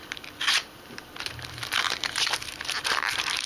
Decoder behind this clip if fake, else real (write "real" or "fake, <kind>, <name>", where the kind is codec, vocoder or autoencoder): fake, vocoder, BigVGAN v2